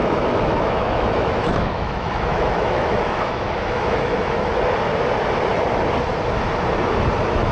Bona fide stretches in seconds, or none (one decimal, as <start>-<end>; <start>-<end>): 4.5-7.5